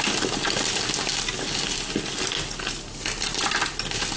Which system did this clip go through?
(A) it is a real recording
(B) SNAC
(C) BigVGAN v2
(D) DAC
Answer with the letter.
A